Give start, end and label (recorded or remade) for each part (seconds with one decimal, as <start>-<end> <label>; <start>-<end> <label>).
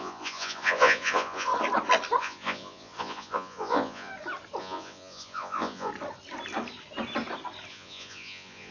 0.0-1.5 remade; 1.5-2.2 recorded; 2.2-4.1 remade; 4.1-4.6 recorded; 4.6-5.9 remade; 5.9-7.7 recorded; 7.7-8.7 remade